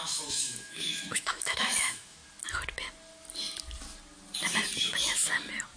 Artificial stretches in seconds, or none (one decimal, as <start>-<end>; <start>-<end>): 0.0-2.2